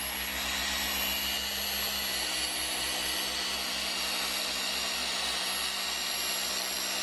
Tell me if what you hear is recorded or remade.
recorded